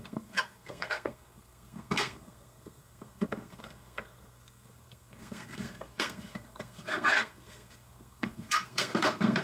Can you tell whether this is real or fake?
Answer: fake